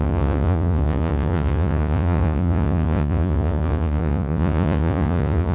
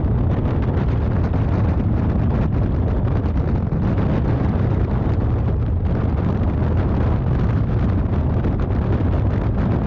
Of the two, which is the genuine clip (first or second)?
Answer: second